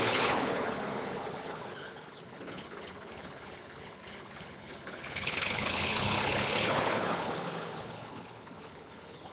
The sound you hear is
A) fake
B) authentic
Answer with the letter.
A